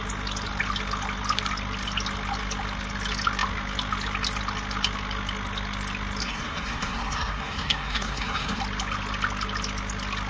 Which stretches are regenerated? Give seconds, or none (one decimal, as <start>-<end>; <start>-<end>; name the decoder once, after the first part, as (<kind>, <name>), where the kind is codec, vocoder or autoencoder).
6.2-8.6 (codec, SNAC)